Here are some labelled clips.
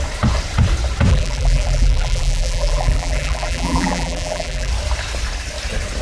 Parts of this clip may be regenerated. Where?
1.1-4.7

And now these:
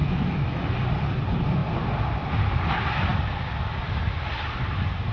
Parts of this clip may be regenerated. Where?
0.0-0.8

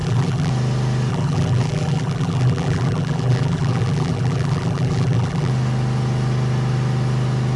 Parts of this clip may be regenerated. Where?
0.0-0.5; 1.1-5.5

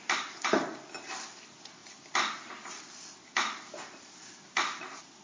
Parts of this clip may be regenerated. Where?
none